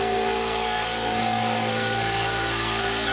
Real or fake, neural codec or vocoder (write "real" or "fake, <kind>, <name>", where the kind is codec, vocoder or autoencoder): fake, codec, SNAC